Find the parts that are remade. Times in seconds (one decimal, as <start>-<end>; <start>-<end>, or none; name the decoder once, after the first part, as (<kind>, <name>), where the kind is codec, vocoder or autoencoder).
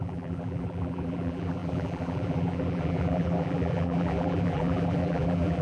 0.0-5.6 (vocoder, BigVGAN v2)